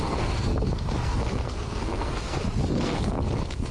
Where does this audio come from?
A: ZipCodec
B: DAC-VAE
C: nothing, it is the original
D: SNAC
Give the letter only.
D